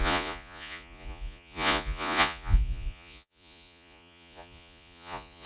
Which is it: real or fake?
fake